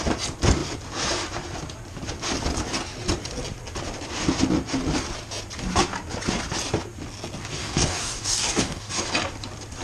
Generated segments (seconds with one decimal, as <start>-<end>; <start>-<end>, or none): 7.6-8.9